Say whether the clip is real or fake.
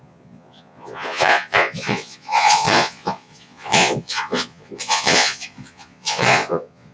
fake